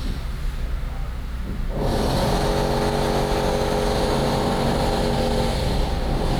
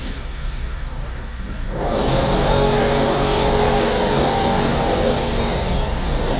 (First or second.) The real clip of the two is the first